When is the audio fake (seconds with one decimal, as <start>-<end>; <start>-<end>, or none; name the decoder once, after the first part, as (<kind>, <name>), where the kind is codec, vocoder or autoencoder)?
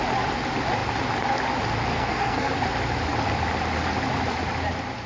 1.9-2.5 (codec, SNAC)